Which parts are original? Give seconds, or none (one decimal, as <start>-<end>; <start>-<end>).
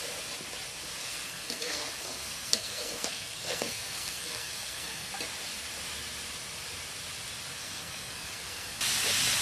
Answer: 0.0-1.0; 5.1-7.6; 8.8-9.4